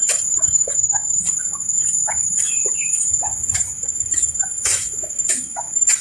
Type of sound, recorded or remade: remade